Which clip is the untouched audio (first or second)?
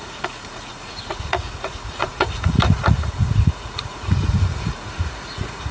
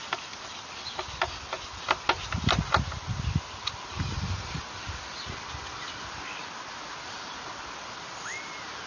second